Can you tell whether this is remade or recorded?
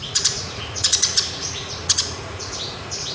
remade